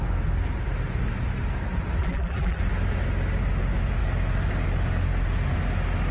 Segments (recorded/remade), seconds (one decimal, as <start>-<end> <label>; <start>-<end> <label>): 0.0-2.0 recorded; 2.0-2.6 remade; 2.6-6.1 recorded